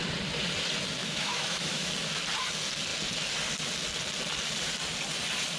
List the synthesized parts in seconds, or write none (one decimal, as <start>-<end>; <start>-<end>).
1.0-1.9